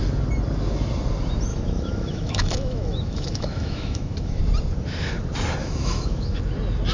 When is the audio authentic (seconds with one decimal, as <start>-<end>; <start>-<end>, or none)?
0.0-1.5; 4.4-5.6; 6.4-6.9